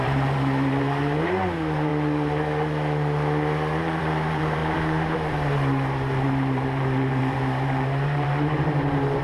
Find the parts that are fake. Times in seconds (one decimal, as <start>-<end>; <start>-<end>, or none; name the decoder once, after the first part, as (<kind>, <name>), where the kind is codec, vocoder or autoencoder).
0.0-1.9 (vocoder, BigVGAN v2); 4.0-9.2